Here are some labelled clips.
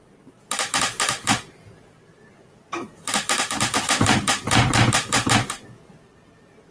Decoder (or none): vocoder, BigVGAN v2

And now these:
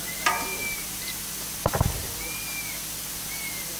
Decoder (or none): none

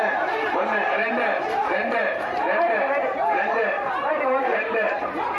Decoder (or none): vocoder, BigVGAN v2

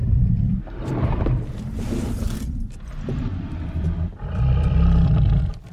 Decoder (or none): vocoder, BigVGAN v2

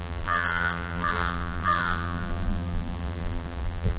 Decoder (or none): vocoder, BigVGAN v2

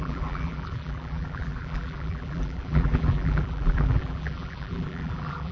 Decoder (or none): vocoder, BigVGAN v2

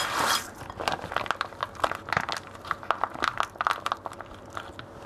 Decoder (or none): none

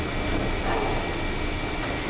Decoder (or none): none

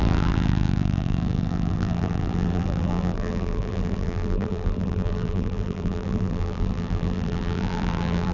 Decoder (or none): vocoder, BigVGAN v2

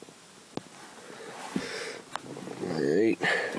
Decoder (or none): none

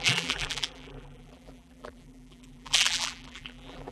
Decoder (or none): vocoder, BigVGAN v2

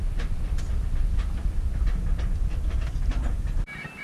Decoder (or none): none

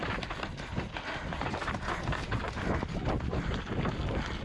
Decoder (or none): none